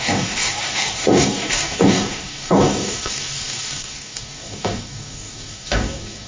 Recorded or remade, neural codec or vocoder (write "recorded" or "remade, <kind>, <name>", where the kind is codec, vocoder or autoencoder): remade, codec, DAC